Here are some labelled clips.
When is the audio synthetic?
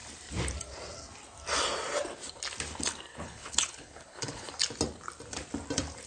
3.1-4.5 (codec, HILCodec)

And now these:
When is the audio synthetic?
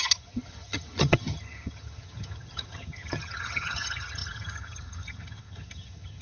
0.0-6.2 (vocoder, HiFi-GAN)